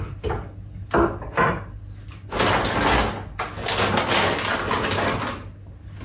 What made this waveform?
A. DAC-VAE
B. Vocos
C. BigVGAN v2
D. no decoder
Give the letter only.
D